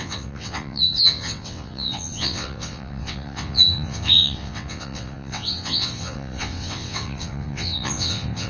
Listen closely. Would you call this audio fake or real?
fake